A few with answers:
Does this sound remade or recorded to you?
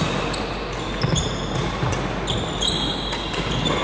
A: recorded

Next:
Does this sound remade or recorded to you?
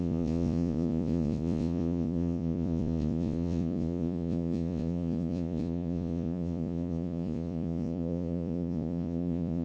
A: remade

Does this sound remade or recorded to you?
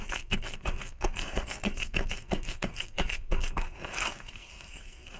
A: remade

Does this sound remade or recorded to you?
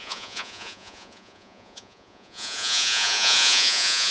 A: remade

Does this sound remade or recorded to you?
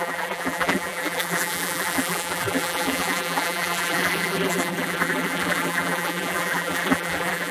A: remade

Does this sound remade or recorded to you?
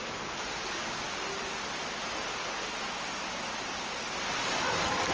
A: recorded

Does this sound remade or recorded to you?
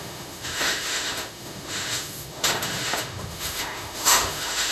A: remade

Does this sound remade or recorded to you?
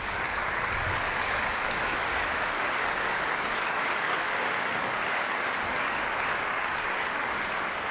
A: remade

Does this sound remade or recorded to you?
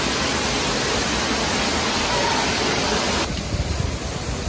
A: recorded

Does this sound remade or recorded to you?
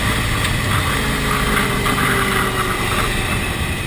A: recorded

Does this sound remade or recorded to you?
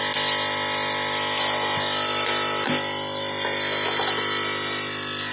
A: recorded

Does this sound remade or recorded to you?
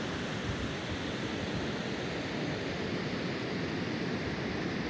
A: recorded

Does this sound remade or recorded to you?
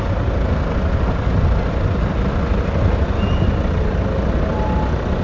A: recorded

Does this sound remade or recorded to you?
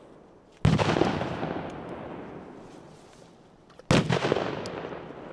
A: recorded